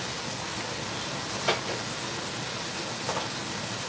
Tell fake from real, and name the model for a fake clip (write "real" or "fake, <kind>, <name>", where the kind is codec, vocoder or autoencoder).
real